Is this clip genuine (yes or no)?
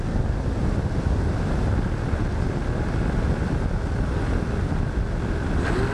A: yes